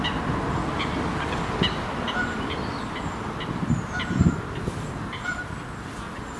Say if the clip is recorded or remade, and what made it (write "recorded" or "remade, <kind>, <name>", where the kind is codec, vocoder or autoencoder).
recorded